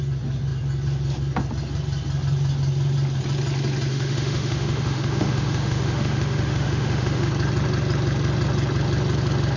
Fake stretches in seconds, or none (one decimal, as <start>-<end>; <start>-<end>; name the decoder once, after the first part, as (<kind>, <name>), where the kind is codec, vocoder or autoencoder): 3.9-7.3 (autoencoder, DAC-VAE)